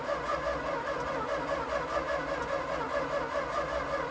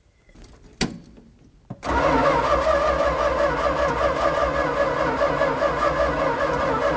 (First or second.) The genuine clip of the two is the second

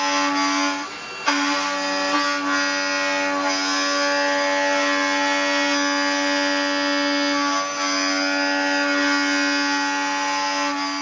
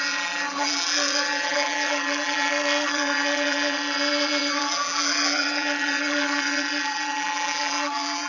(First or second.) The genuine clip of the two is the first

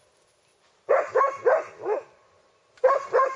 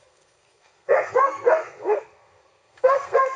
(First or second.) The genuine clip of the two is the first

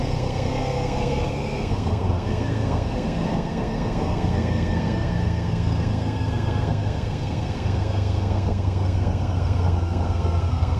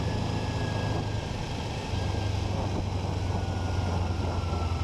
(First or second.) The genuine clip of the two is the second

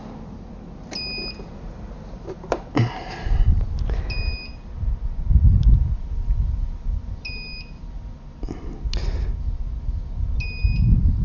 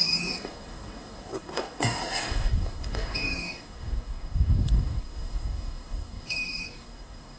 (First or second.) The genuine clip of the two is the first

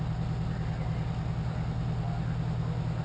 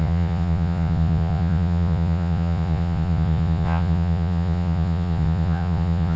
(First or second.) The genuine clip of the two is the first